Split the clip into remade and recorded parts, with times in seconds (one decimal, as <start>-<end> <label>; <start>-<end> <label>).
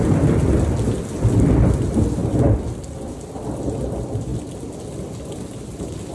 0.0-6.1 recorded